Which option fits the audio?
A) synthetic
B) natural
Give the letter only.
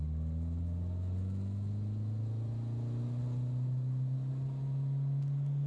B